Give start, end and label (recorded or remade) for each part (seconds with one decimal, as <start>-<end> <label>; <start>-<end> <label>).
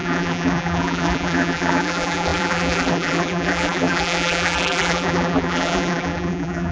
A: 0.0-6.7 remade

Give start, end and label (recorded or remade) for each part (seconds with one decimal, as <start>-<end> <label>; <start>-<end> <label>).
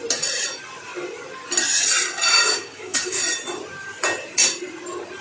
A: 0.0-2.3 recorded; 2.3-3.2 remade; 3.2-5.2 recorded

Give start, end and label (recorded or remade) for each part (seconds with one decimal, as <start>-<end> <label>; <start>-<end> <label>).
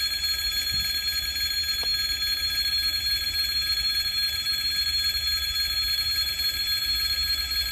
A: 0.0-7.7 recorded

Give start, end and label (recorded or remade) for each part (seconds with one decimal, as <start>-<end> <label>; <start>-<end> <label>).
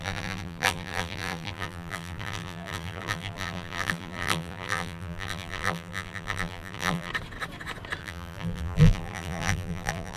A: 0.0-7.1 remade; 7.1-8.0 recorded; 8.0-10.2 remade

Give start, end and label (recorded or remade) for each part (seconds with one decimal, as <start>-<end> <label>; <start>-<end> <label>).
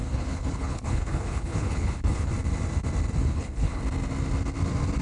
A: 0.0-2.3 remade; 2.3-3.2 recorded; 3.2-3.8 remade; 3.8-5.0 recorded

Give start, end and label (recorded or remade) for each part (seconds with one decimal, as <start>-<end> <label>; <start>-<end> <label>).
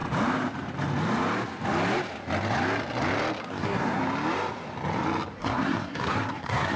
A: 0.0-3.4 recorded; 3.4-4.0 remade; 4.0-5.4 recorded; 5.4-6.8 remade